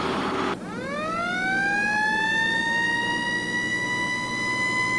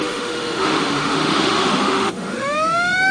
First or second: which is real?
first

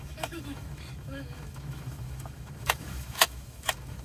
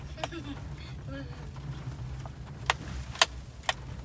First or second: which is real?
second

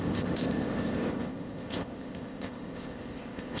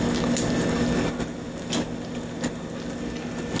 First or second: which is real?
second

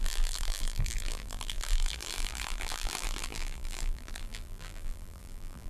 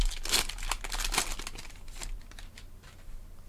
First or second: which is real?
second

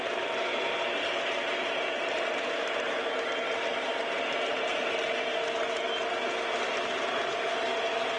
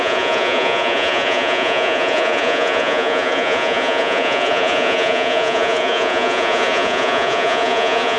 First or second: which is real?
first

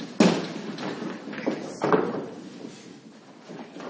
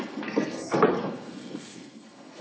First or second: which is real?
first